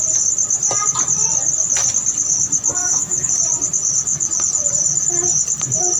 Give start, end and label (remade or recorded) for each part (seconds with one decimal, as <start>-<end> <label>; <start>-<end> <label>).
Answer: 0.0-2.8 recorded; 2.8-3.3 remade; 3.3-6.0 recorded